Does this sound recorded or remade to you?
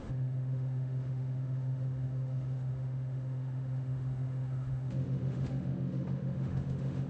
remade